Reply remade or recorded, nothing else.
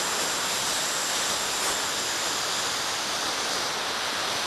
recorded